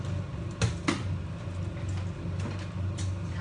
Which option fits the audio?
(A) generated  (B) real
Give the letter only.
B